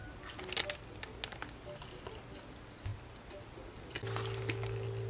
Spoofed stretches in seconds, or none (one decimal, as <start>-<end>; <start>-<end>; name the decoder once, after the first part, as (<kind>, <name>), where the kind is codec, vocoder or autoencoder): none